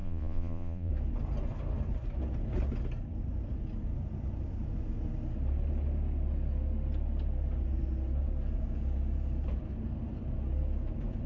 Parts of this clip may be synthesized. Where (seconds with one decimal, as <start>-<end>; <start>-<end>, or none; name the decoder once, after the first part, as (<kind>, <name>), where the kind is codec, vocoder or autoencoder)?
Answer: 0.0-0.9 (vocoder, Vocos)